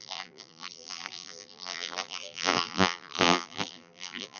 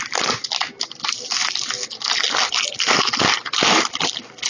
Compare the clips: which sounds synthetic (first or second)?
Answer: first